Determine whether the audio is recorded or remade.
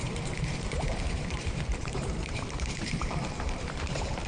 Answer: remade